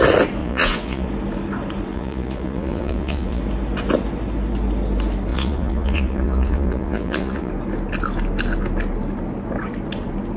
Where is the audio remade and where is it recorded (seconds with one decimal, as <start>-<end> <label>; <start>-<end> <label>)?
0.0-0.4 recorded; 0.4-1.1 remade; 1.1-1.9 recorded; 1.9-3.4 remade; 3.4-5.3 recorded; 5.3-7.5 remade; 7.5-10.4 recorded